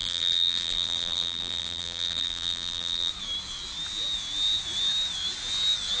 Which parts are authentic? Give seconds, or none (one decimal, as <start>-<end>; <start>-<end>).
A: 3.1-6.0